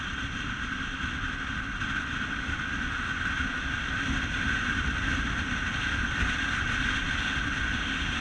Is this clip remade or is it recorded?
recorded